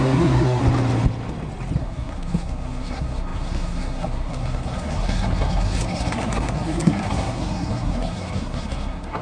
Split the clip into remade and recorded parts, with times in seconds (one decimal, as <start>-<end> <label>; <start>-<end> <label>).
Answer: 0.0-0.6 remade; 0.6-1.8 recorded; 1.8-9.2 remade